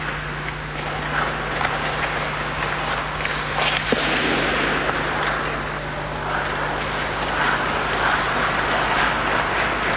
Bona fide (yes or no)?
yes